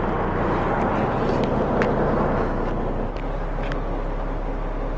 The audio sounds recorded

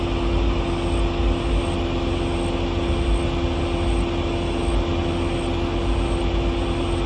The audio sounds recorded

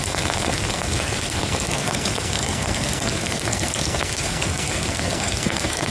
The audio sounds remade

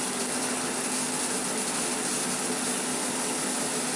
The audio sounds recorded